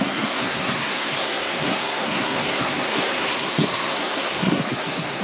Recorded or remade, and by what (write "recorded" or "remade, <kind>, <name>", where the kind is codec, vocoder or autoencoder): remade, codec, SNAC